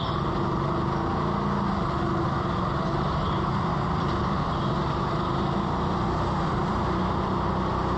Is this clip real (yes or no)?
yes